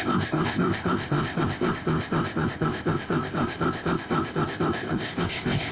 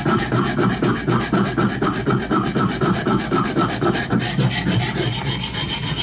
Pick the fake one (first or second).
first